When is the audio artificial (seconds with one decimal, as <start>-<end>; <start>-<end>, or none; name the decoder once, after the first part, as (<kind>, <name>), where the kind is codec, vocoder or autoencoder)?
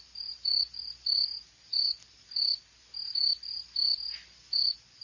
none